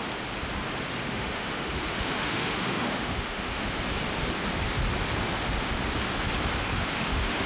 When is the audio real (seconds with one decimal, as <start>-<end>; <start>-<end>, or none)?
0.0-1.0; 3.8-6.6